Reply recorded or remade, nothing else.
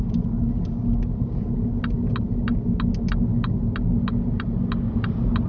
recorded